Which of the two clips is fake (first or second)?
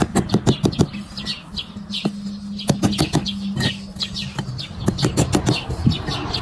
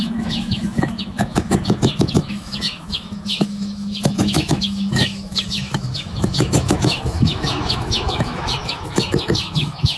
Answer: second